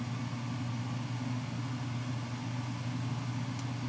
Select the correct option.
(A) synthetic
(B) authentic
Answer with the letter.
B